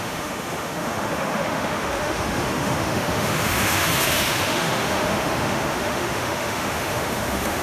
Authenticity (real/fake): fake